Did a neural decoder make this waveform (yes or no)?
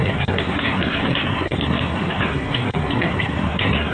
yes